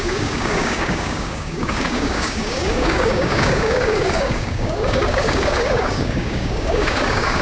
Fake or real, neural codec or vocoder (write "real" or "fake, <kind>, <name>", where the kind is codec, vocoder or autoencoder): fake, codec, DAC